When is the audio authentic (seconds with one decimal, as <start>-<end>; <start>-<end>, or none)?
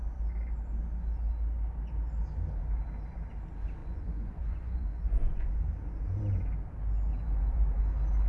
0.0-3.8; 5.5-7.1; 7.8-8.3